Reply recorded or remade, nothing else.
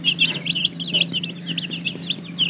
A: recorded